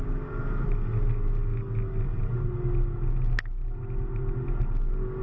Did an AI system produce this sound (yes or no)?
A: no